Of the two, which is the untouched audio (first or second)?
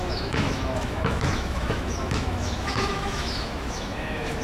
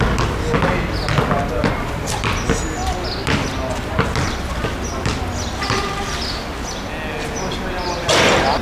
second